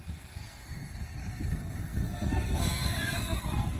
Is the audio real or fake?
fake